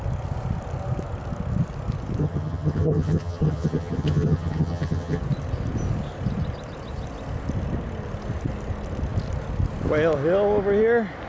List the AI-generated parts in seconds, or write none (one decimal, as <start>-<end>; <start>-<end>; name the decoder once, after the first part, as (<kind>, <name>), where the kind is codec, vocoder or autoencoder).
2.2-5.2 (vocoder, HiFi-GAN)